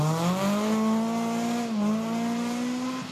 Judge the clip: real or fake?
real